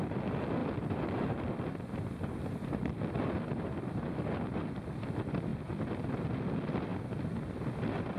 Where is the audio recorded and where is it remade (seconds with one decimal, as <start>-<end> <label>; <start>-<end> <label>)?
0.0-0.6 recorded; 0.6-4.6 remade; 4.6-5.5 recorded; 5.5-6.0 remade; 6.0-6.9 recorded; 6.9-8.2 remade